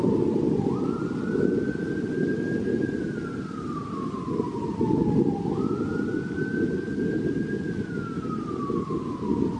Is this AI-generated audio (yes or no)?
no